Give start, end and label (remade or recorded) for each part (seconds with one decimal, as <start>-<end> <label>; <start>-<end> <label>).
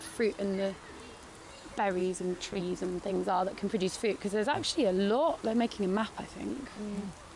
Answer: 0.0-2.0 recorded; 2.0-2.6 remade; 2.6-7.4 recorded